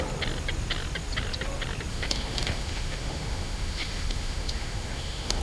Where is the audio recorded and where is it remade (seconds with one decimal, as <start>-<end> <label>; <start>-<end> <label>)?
0.0-1.9 recorded; 1.9-5.4 remade